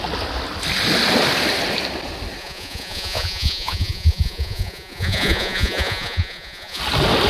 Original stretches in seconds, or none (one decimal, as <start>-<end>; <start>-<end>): 0.0-2.4; 6.8-7.3